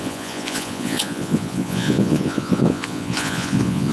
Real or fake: fake